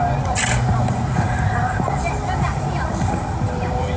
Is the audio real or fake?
real